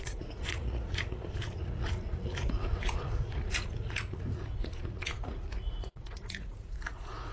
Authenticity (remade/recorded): remade